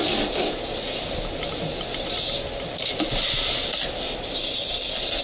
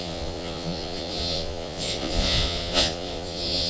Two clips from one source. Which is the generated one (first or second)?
second